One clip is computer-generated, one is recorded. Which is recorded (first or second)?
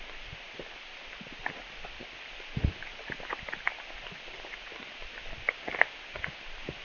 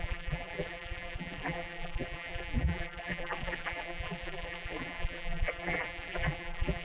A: first